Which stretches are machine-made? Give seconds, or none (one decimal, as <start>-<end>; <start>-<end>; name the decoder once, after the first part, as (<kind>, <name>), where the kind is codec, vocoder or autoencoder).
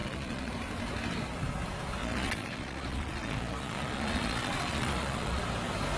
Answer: 0.0-0.5 (vocoder, Vocos); 2.0-5.4